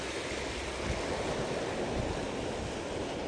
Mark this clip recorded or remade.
recorded